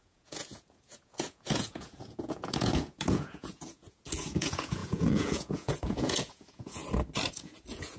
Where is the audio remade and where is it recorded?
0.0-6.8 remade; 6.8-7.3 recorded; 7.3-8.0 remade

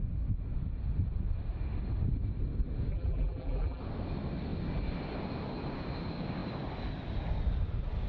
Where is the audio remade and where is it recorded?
0.0-2.9 recorded; 2.9-3.8 remade; 3.8-8.1 recorded

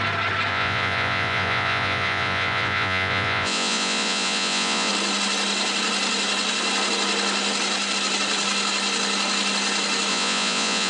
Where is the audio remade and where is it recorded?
0.0-0.5 recorded; 0.5-4.9 remade; 4.9-10.1 recorded; 10.1-10.9 remade

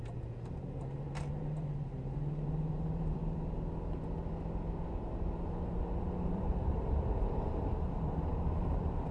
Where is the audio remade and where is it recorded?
0.0-3.2 remade; 3.2-6.2 recorded; 6.2-9.1 remade

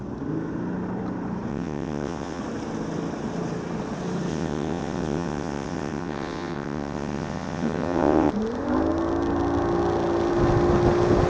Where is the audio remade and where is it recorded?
0.0-1.5 recorded; 1.5-2.4 remade; 2.4-4.3 recorded; 4.3-8.3 remade; 8.3-11.3 recorded

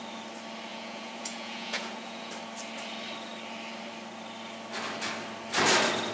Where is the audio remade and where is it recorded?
0.0-0.7 recorded; 0.7-2.3 remade; 2.3-6.1 recorded

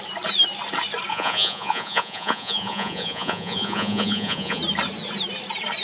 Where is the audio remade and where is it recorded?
0.0-1.1 recorded; 1.1-4.6 remade; 4.6-5.8 recorded

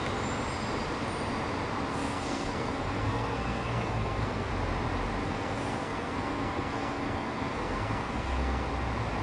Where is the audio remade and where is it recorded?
0.0-1.9 recorded; 1.9-4.5 remade; 4.5-5.2 recorded; 5.2-8.7 remade; 8.7-9.2 recorded